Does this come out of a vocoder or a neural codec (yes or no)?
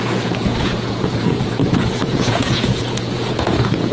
yes